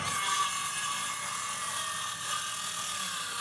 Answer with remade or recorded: recorded